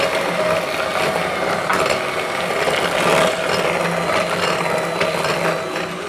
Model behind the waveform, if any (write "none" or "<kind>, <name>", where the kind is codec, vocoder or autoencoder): none